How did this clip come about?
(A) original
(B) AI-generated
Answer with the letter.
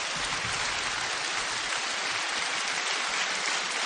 A